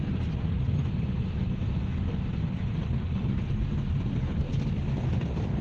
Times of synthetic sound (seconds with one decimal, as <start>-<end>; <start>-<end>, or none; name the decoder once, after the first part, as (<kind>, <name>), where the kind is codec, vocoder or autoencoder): none